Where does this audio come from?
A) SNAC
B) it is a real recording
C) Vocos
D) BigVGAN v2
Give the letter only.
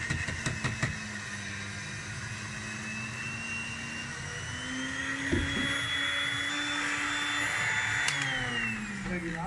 B